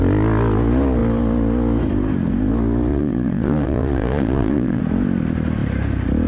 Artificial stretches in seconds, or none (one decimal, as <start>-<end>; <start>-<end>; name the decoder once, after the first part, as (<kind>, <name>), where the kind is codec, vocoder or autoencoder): 2.9-4.8 (vocoder, Vocos)